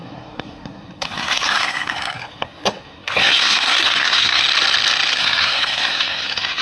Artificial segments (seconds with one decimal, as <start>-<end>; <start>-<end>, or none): 0.0-4.4; 5.1-6.6